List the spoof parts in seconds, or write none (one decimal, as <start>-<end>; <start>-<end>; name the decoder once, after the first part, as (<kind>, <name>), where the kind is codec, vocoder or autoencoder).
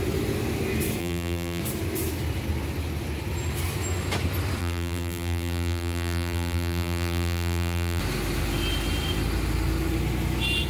1.0-1.6 (vocoder, BigVGAN v2); 4.6-8.0